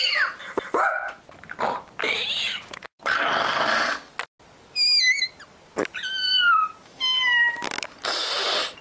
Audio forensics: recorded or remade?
recorded